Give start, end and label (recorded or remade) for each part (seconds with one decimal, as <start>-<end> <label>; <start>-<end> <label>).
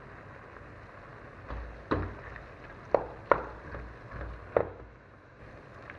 0.0-4.6 recorded; 4.6-5.4 remade; 5.4-6.0 recorded